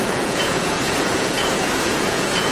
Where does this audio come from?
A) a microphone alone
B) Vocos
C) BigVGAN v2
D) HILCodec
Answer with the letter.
B